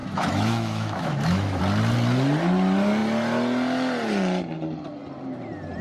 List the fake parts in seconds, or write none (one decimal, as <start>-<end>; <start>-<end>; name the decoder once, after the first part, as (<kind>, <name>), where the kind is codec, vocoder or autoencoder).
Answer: 0.0-1.6 (autoencoder, DAC-VAE)